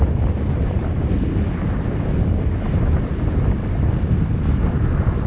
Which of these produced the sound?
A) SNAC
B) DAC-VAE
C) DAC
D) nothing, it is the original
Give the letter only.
D